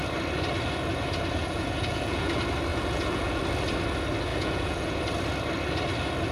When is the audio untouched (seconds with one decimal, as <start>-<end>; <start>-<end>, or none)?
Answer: 0.0-1.4; 2.3-2.7; 3.4-4.3; 5.0-6.3